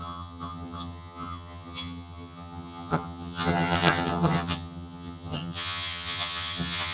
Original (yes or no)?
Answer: no